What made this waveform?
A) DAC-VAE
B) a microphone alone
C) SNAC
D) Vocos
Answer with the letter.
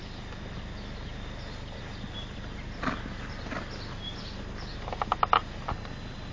B